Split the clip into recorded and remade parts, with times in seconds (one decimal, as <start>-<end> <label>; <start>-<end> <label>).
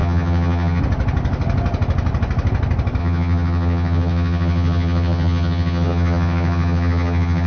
0.0-0.8 remade; 0.8-3.0 recorded; 3.0-7.5 remade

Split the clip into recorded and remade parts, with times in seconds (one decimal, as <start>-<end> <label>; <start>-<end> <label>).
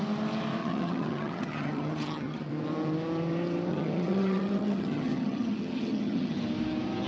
0.0-0.6 recorded; 0.6-2.5 remade; 2.5-3.7 recorded; 3.7-6.4 remade; 6.4-7.1 recorded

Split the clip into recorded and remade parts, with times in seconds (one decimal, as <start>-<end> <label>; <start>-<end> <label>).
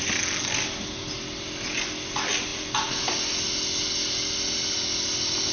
0.0-5.5 recorded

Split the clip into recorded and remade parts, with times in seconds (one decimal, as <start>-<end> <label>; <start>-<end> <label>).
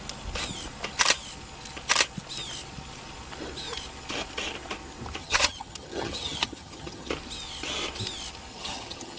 0.0-5.2 recorded; 5.2-7.1 remade; 7.1-8.5 recorded; 8.5-9.2 remade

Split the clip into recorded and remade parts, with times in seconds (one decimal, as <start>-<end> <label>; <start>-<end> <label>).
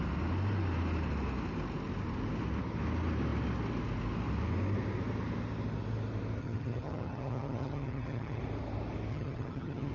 0.0-6.4 recorded; 6.4-8.4 remade; 8.4-9.1 recorded; 9.1-9.9 remade